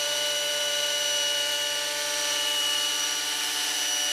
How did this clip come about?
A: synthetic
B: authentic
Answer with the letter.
A